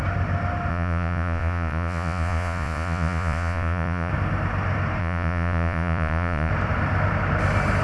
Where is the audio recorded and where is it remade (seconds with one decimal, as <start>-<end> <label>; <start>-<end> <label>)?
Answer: 0.0-0.7 recorded; 0.7-4.1 remade; 4.1-5.0 recorded; 5.0-6.5 remade; 6.5-7.8 recorded